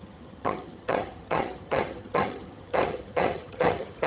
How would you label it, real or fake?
fake